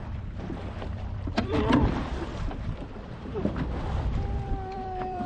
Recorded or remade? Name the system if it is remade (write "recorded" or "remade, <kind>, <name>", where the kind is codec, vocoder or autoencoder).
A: remade, vocoder, BigVGAN v2